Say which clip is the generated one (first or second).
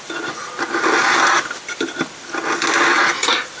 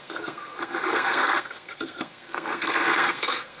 second